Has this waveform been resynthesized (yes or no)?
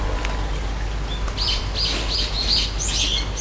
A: no